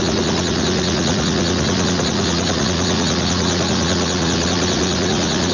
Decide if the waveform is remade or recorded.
remade